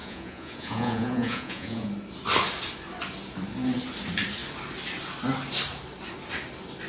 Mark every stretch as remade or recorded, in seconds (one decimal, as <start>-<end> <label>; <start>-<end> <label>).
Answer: 0.0-1.9 remade; 1.9-6.9 recorded